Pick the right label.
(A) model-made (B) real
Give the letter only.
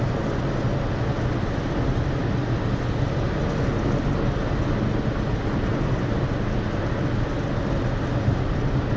B